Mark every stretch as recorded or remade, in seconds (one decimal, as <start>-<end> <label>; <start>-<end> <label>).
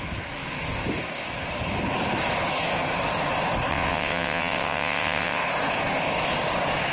0.0-3.7 recorded; 3.7-5.4 remade; 5.4-6.9 recorded